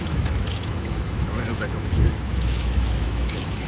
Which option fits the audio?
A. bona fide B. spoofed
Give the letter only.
B